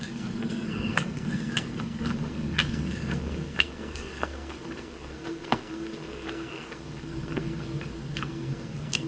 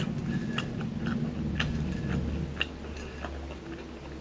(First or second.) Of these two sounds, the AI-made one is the first